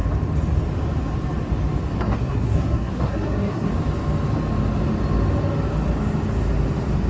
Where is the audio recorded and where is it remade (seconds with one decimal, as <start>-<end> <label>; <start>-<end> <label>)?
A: 0.0-2.0 recorded; 2.0-3.7 remade; 3.7-7.1 recorded